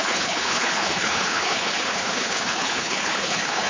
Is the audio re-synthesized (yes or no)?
yes